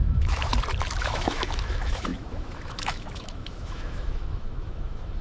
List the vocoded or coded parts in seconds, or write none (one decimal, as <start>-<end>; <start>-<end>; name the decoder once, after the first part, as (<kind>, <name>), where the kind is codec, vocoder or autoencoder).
0.0-0.5 (autoencoder, DAC-VAE); 1.0-5.2